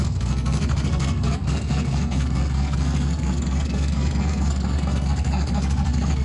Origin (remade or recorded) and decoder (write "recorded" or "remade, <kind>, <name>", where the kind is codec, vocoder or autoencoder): remade, codec, SNAC